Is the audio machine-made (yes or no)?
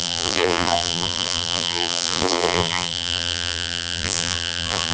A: yes